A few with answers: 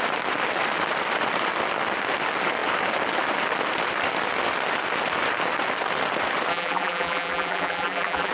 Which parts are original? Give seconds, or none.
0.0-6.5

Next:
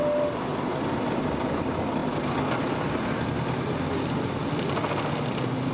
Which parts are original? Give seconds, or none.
0.0-5.7

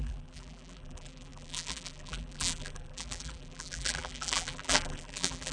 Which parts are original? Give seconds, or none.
none

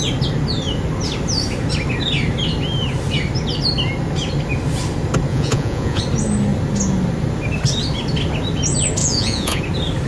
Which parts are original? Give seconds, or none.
0.0-5.3; 6.0-9.0; 9.6-10.1

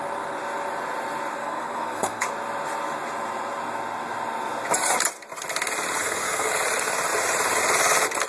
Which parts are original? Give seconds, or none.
0.0-1.4; 2.3-6.0; 6.5-8.3

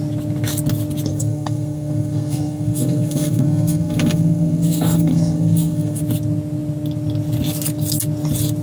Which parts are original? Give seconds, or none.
0.0-1.1; 6.0-8.6